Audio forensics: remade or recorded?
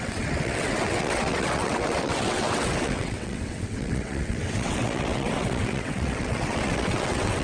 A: remade